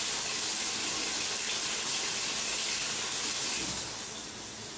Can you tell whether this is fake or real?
real